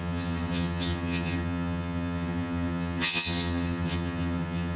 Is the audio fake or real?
fake